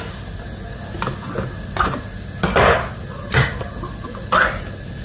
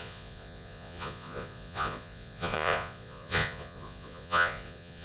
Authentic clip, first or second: first